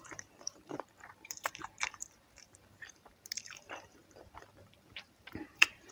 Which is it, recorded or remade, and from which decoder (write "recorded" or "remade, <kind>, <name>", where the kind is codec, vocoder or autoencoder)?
remade, vocoder, BigVGAN v2